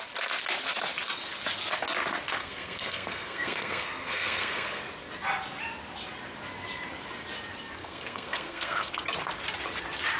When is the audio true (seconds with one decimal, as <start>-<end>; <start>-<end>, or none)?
0.0-2.4; 4.8-7.8; 8.9-10.2